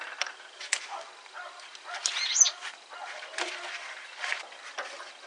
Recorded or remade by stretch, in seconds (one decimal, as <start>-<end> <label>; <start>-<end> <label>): 0.0-5.3 recorded